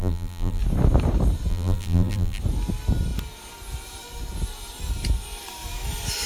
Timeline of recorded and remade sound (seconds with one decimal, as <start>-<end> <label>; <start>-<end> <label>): 0.0-0.6 remade; 0.6-1.5 recorded; 1.5-2.4 remade; 2.4-6.3 recorded